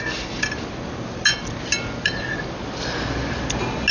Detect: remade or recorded recorded